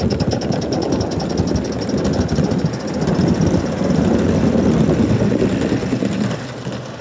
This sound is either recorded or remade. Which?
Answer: recorded